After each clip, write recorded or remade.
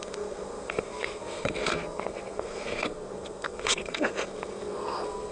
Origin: remade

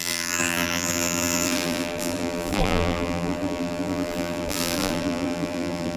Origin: remade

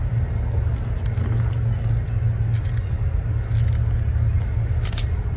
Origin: recorded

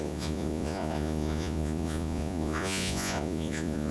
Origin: remade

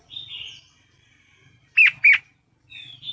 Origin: recorded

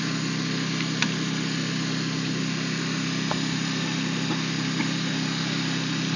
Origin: recorded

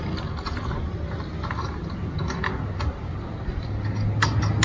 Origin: recorded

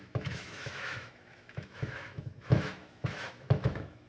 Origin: remade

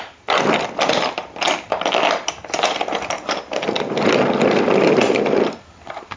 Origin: recorded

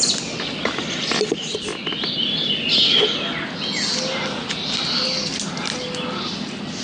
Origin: recorded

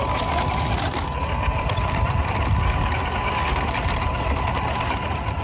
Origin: recorded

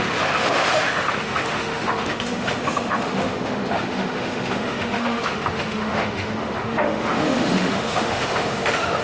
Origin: remade